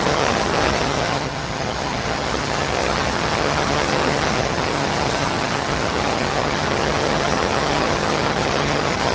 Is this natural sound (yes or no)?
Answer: no